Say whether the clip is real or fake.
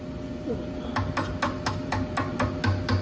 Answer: real